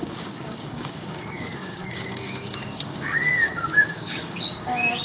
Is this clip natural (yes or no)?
no